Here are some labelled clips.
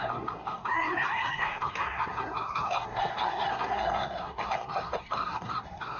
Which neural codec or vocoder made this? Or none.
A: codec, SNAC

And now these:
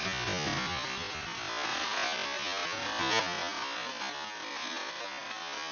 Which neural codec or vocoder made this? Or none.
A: none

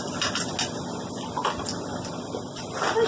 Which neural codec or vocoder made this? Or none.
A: none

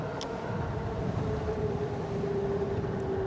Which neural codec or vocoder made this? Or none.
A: none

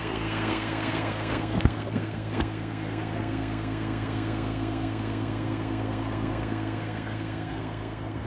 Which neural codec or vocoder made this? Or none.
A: codec, SNAC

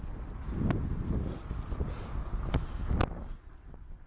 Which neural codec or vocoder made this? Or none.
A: none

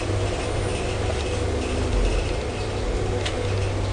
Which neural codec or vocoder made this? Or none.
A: none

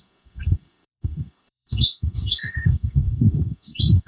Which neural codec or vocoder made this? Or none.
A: codec, SNAC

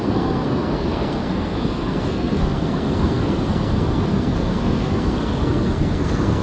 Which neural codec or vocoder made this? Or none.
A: codec, SNAC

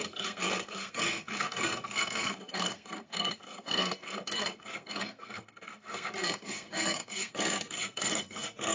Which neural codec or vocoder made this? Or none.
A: codec, SNAC